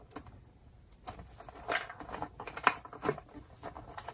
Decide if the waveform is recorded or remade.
recorded